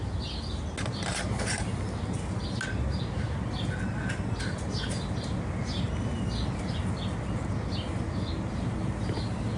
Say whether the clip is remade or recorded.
recorded